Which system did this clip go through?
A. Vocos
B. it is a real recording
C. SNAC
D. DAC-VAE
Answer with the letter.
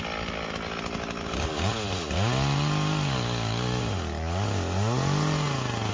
B